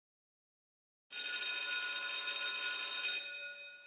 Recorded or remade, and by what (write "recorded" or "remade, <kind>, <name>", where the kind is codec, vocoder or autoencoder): recorded